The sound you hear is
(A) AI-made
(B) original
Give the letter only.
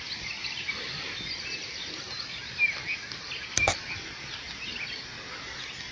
B